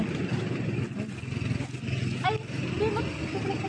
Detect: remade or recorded recorded